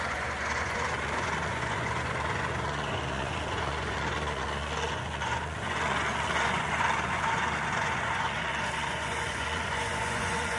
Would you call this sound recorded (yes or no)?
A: no